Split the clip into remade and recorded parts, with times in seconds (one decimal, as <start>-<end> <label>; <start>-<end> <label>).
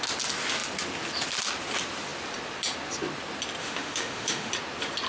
0.0-3.6 recorded; 3.6-4.5 remade; 4.5-5.1 recorded